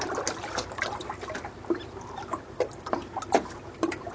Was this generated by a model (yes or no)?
no